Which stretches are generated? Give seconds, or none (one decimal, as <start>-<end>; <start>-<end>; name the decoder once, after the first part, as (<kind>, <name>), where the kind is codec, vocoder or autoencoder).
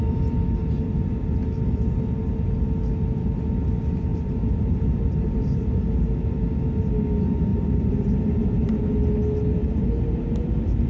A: 4.1-5.8 (vocoder, BigVGAN v2); 7.5-8.8; 9.6-10.9